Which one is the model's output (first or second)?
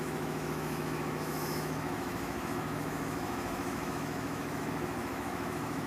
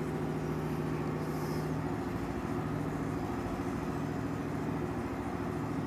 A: first